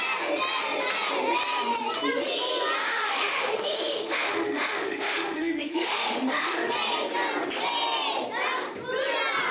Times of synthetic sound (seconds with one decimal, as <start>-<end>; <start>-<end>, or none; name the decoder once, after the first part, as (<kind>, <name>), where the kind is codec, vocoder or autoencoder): 2.8-6.7 (autoencoder, DAC-VAE)